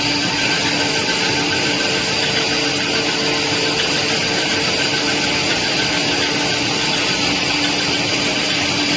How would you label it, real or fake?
real